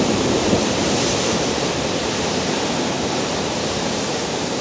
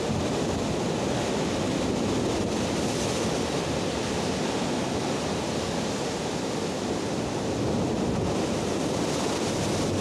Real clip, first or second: second